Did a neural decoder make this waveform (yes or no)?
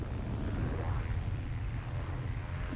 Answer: no